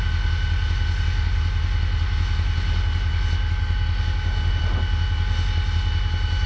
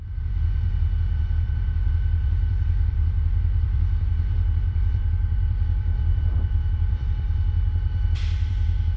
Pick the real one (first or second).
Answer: first